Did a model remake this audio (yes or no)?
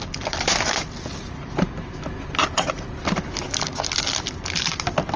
no